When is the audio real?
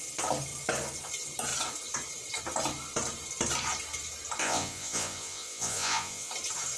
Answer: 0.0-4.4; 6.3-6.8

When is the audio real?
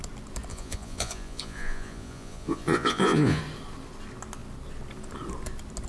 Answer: 0.0-0.5; 3.4-5.9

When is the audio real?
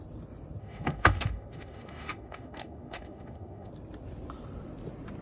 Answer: 0.0-0.6; 3.7-5.2